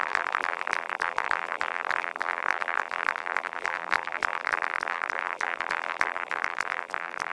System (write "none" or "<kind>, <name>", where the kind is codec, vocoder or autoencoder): vocoder, BigVGAN v2